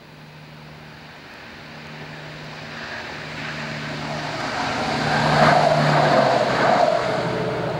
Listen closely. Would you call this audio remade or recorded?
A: recorded